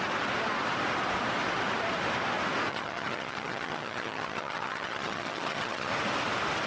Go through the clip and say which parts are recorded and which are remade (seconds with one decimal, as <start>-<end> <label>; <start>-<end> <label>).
0.0-2.7 recorded; 2.7-5.9 remade; 5.9-6.7 recorded